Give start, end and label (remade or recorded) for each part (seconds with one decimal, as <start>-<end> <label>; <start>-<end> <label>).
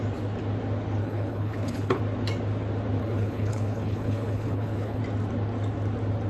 0.0-1.0 recorded; 1.0-2.0 remade; 2.0-3.0 recorded; 3.0-5.0 remade; 5.0-6.3 recorded